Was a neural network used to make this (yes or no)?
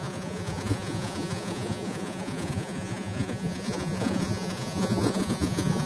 yes